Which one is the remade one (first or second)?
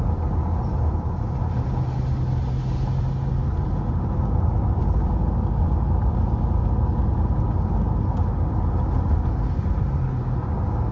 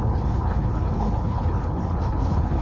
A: second